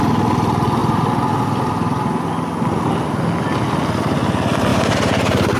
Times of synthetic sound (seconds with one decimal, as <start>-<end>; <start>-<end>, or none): 4.7-5.6